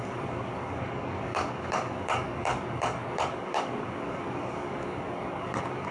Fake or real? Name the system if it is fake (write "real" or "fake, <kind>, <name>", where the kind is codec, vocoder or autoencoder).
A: fake, codec, DAC